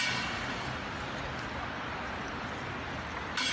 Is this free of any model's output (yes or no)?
yes